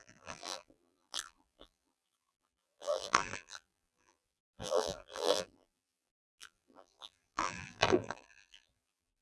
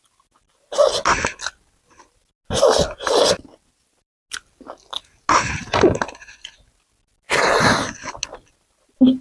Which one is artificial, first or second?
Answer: first